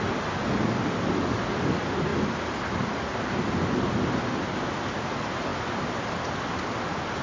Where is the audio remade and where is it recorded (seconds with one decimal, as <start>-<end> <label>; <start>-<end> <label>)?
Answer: 0.0-7.2 recorded